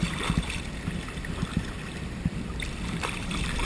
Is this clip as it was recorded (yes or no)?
no